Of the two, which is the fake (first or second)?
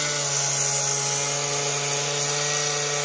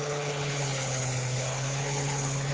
second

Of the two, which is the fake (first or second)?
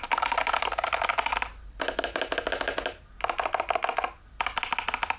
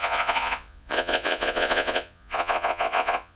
second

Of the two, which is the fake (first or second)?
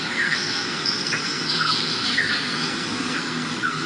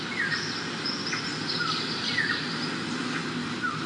first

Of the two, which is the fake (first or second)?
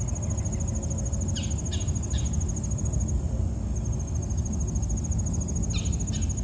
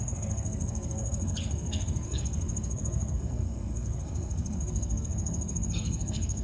second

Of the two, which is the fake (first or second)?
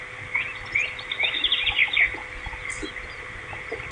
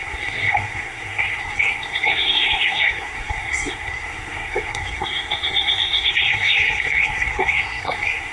second